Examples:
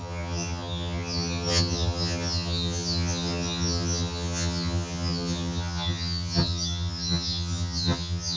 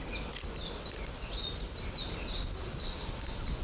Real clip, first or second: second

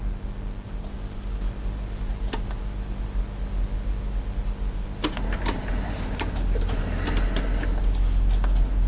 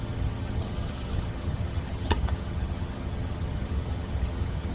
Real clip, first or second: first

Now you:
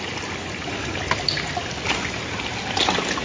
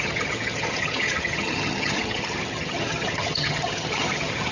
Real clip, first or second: first